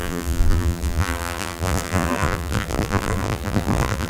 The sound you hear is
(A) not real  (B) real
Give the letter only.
A